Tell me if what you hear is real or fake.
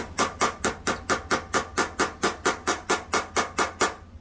real